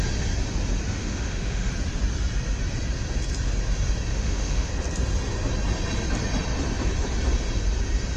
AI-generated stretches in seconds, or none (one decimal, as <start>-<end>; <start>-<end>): 1.0-1.7; 4.1-4.7